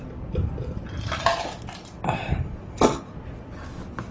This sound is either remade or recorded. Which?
recorded